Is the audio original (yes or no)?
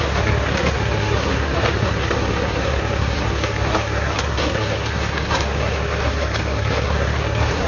no